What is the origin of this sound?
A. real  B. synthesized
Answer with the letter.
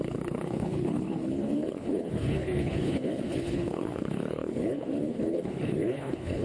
B